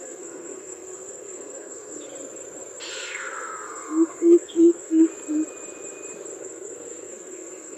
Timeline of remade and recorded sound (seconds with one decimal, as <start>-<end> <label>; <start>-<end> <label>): 0.0-2.1 remade; 2.1-2.9 recorded; 2.9-5.1 remade; 5.1-6.4 recorded; 6.4-7.8 remade